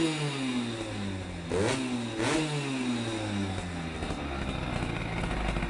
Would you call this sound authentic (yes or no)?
yes